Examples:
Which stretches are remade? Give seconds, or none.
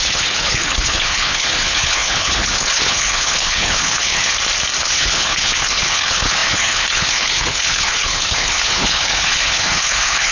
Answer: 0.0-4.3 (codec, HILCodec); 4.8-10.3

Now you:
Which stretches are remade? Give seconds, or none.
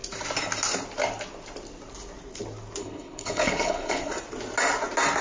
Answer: 2.8-4.1 (codec, HILCodec)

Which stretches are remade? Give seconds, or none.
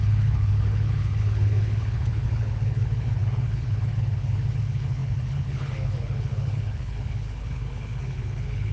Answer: 0.0-8.7 (codec, HILCodec)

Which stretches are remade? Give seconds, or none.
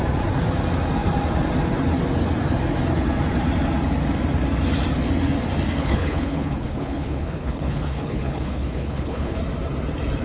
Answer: 5.8-9.4 (codec, HILCodec)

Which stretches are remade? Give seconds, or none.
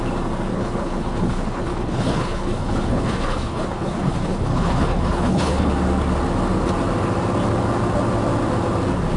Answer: 0.5-5.7 (codec, HILCodec)